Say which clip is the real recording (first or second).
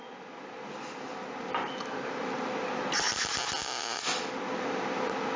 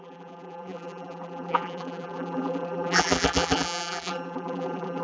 first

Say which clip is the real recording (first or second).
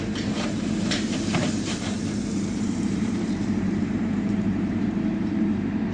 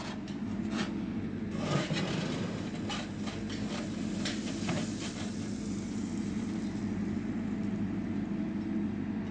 second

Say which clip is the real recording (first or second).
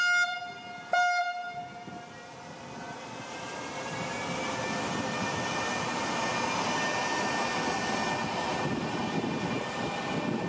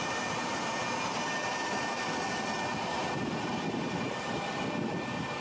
first